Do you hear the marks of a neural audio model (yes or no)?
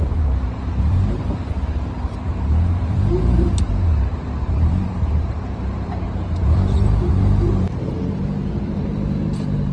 yes